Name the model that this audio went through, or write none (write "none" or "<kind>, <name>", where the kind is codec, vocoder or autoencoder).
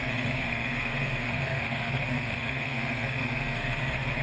codec, SNAC